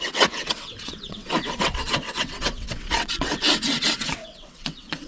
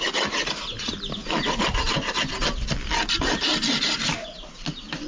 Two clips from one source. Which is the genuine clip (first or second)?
second